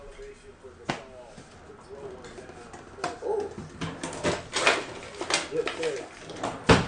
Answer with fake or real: real